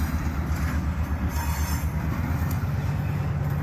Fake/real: real